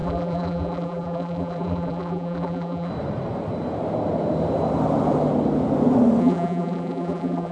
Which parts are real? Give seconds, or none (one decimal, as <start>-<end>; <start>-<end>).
2.9-6.2